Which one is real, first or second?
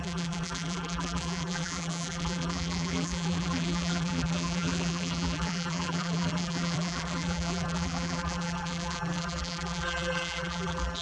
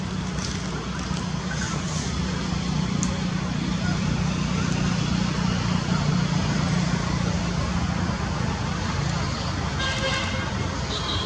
second